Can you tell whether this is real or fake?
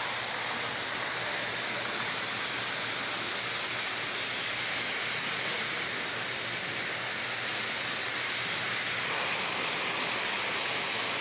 real